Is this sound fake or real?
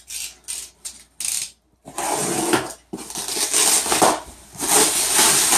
real